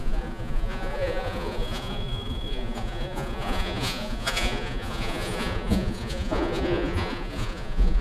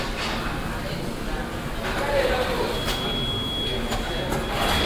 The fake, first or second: first